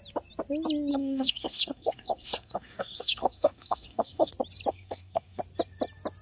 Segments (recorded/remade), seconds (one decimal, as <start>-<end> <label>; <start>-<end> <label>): 0.0-0.9 recorded; 0.9-4.3 remade; 4.3-4.7 recorded; 4.7-5.4 remade; 5.4-6.2 recorded